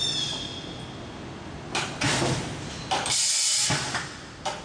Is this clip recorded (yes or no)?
yes